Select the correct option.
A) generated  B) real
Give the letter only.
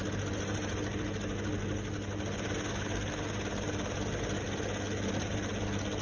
B